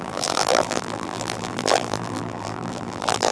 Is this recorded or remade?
remade